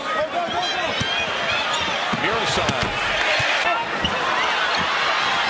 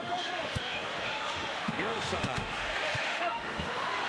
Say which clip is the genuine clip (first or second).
first